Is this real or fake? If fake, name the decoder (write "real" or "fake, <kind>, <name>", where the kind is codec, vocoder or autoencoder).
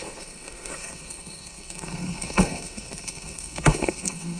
fake, codec, SNAC